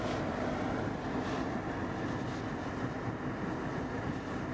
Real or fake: real